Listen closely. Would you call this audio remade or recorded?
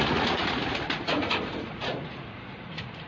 remade